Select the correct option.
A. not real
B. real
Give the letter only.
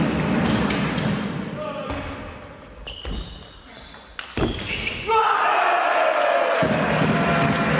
B